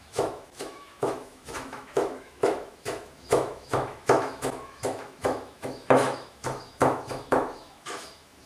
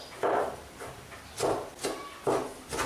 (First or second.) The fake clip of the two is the first